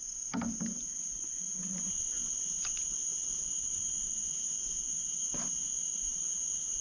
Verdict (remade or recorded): recorded